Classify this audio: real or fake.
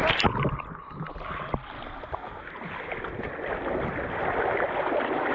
real